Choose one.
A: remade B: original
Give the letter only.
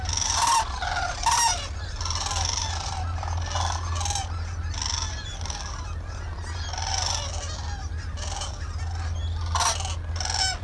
B